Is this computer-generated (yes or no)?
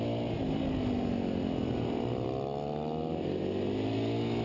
no